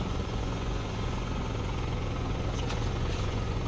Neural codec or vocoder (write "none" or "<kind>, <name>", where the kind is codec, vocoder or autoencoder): vocoder, Vocos